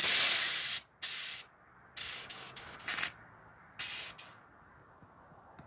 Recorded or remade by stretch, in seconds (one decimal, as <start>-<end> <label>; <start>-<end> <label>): 0.0-2.0 recorded; 2.0-2.8 remade; 2.8-5.7 recorded